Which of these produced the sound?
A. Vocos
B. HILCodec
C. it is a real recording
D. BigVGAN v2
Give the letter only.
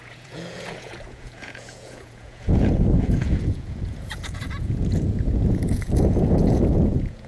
A